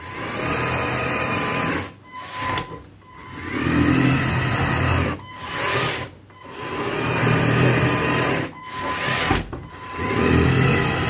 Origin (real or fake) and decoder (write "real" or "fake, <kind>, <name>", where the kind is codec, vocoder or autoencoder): fake, vocoder, BigVGAN v2